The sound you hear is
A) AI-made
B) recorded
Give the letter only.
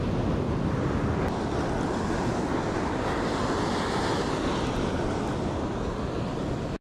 B